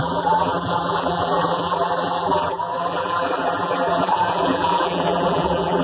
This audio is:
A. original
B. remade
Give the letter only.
B